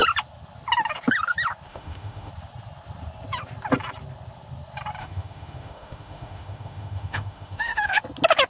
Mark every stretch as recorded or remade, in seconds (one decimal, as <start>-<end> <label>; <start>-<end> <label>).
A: 0.0-1.7 recorded; 1.7-2.3 remade; 2.3-5.0 recorded; 5.0-8.0 remade; 8.0-8.5 recorded